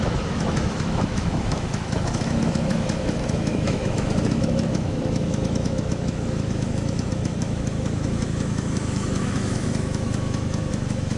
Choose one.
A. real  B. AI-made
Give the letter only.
B